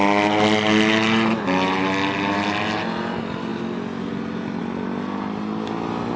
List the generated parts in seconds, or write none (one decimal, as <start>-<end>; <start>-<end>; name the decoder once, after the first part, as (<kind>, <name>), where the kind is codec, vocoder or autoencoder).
none